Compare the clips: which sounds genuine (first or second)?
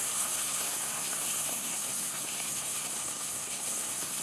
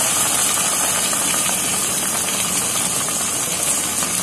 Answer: second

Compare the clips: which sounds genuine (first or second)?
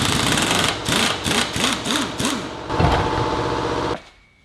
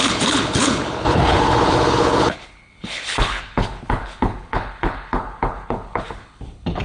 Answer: first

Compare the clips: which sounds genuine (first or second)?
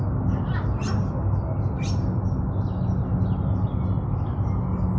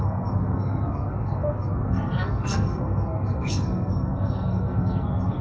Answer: first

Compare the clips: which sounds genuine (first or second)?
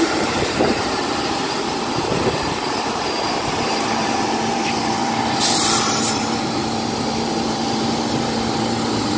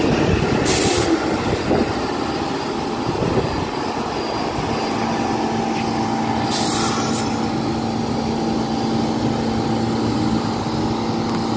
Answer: second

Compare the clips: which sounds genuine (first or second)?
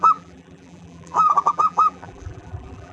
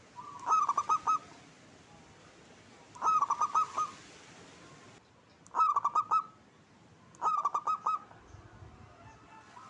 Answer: second